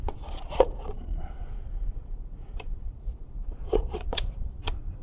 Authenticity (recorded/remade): remade